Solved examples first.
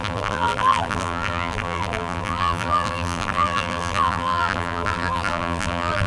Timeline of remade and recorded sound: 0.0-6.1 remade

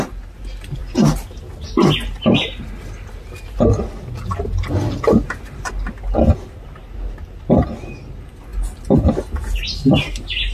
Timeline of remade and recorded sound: 0.0-10.5 recorded